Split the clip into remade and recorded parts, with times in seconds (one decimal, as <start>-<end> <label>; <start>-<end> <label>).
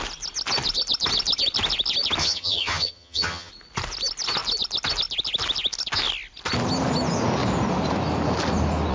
0.0-2.2 recorded; 2.2-3.5 remade; 3.5-8.9 recorded